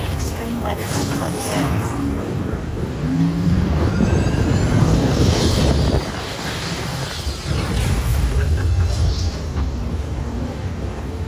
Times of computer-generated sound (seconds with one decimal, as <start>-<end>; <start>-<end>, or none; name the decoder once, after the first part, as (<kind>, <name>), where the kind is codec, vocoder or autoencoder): 0.0-3.9 (codec, DAC); 4.8-5.6; 6.2-7.0; 7.9-11.3